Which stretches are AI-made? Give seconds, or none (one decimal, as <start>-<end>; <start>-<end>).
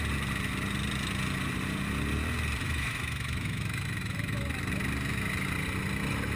2.6-4.4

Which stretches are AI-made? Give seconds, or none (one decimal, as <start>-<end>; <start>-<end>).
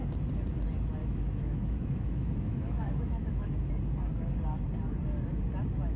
1.0-3.7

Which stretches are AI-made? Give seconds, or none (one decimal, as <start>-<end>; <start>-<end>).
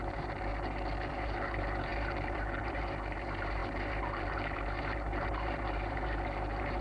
0.0-0.5; 1.1-6.8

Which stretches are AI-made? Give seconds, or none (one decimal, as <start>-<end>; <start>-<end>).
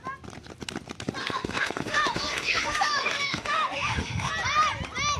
1.2-4.3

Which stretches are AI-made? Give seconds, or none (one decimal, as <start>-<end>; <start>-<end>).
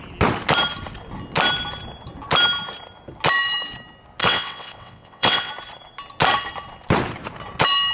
4.2-5.5